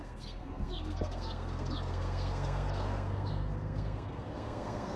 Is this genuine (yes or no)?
no